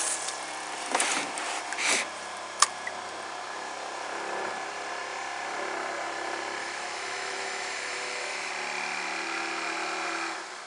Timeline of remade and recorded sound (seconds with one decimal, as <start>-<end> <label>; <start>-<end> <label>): 0.0-6.6 recorded; 6.6-8.5 remade; 8.5-10.7 recorded